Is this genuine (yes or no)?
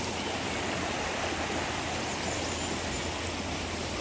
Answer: yes